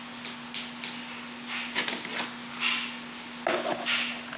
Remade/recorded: recorded